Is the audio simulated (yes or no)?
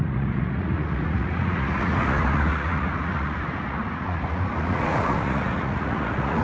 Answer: yes